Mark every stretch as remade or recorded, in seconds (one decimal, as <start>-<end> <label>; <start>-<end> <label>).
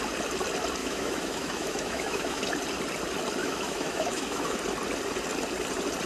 0.0-0.8 recorded; 0.8-2.4 remade; 2.4-3.4 recorded; 3.4-4.6 remade; 4.6-6.1 recorded